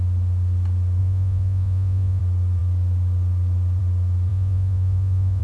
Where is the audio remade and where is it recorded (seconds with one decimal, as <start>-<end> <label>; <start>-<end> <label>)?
0.0-1.0 recorded; 1.0-2.2 remade; 2.2-4.3 recorded; 4.3-5.4 remade